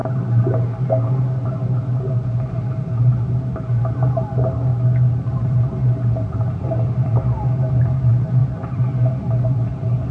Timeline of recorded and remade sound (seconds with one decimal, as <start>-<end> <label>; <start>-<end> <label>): 0.0-4.7 remade; 4.7-5.3 recorded; 5.3-10.1 remade